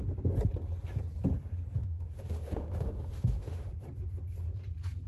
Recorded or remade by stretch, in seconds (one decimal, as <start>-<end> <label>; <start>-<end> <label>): 0.0-1.8 recorded; 1.8-3.7 remade; 3.7-5.1 recorded